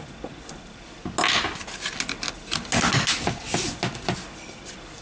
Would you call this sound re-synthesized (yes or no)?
no